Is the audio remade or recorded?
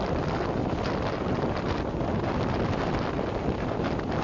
recorded